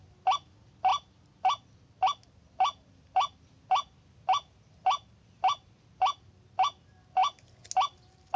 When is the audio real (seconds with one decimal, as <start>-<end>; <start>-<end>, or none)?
0.0-8.4